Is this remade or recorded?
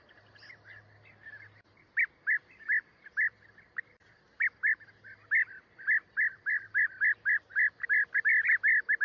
recorded